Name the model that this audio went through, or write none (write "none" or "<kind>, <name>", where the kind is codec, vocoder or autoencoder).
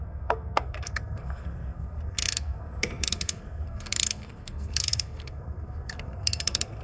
codec, SNAC